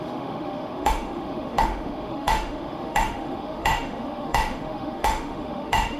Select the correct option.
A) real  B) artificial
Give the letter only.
B